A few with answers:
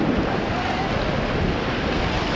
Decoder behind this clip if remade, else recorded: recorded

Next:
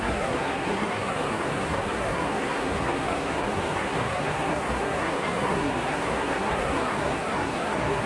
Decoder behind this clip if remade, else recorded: remade, codec, SNAC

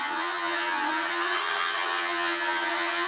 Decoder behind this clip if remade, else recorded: remade, vocoder, HiFi-GAN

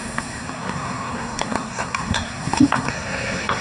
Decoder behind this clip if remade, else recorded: remade, codec, SNAC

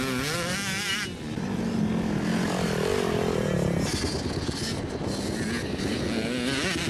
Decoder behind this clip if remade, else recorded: recorded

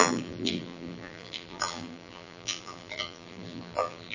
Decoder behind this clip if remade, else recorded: remade, vocoder, BigVGAN v2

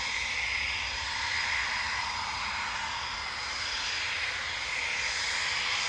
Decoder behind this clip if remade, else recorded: recorded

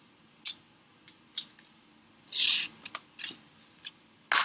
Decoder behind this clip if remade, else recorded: recorded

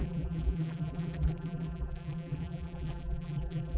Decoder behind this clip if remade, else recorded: remade, vocoder, BigVGAN v2